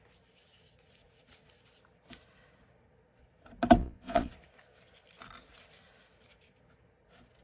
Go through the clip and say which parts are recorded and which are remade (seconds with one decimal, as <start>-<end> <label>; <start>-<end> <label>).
0.0-3.8 recorded; 3.8-4.3 remade; 4.3-7.4 recorded